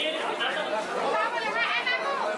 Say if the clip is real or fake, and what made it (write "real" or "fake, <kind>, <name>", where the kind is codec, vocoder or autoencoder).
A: real